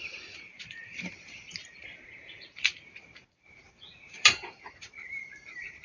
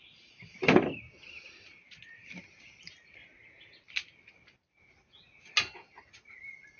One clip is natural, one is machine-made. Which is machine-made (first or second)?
first